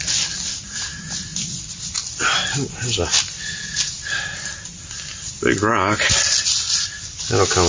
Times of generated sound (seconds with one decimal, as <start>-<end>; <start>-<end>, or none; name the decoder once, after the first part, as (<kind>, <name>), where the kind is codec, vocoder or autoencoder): none